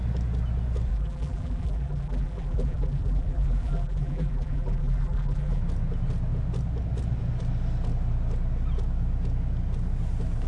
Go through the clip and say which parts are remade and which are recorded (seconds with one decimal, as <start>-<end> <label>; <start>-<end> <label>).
0.0-0.9 recorded; 0.9-5.6 remade; 5.6-10.5 recorded